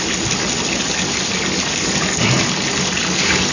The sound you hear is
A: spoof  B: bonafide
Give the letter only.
B